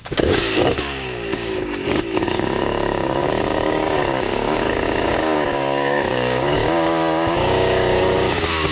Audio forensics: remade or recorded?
remade